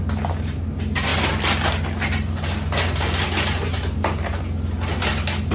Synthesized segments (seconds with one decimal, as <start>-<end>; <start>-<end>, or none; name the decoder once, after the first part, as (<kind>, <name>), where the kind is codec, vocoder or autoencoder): none